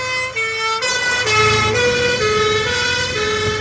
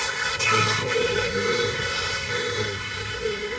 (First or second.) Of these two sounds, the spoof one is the second